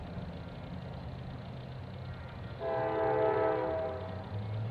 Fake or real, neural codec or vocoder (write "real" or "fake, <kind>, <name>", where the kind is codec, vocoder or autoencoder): real